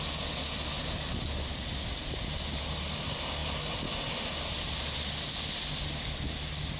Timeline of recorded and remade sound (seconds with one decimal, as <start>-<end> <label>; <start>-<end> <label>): 0.0-6.8 recorded